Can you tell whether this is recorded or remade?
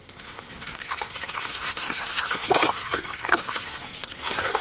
remade